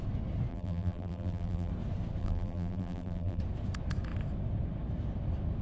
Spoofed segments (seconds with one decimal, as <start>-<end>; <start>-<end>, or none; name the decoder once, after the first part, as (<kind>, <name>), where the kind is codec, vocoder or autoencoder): 0.5-1.7 (vocoder, BigVGAN v2); 2.2-3.4